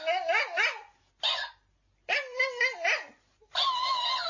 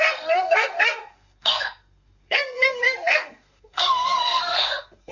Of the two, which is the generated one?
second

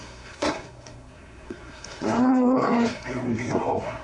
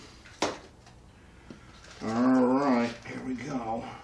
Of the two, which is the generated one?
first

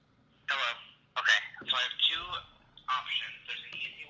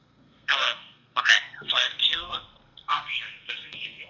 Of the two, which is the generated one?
second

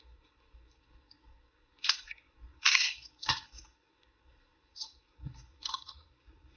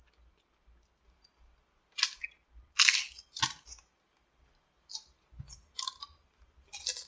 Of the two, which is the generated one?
first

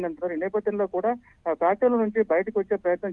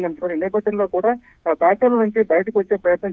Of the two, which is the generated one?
second